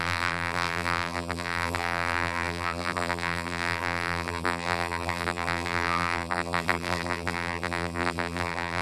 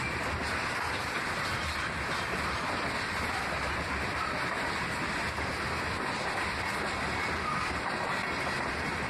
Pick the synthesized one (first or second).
first